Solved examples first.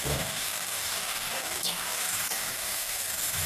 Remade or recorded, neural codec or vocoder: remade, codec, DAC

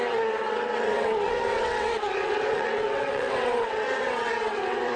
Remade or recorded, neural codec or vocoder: remade, vocoder, WaveNeXt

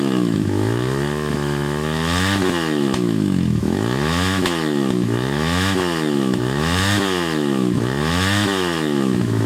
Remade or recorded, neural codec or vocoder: remade, autoencoder, DAC-VAE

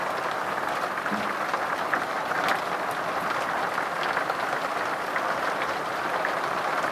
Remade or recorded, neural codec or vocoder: recorded